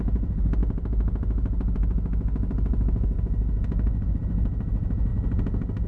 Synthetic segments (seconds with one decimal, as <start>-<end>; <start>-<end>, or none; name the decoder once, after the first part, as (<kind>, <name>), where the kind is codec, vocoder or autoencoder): none